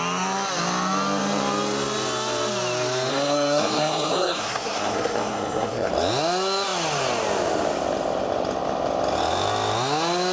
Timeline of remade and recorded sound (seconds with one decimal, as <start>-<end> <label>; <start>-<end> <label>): 0.0-3.1 recorded; 3.1-5.9 remade; 5.9-10.3 recorded